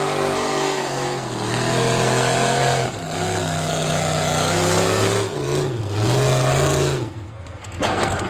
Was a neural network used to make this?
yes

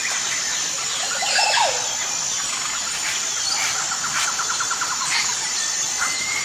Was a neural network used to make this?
no